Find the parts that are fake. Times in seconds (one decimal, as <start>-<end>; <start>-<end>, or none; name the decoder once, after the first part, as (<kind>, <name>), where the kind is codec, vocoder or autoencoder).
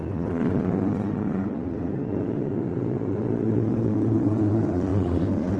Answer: 0.0-5.6 (vocoder, Vocos)